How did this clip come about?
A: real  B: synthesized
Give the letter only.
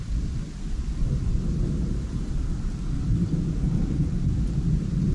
A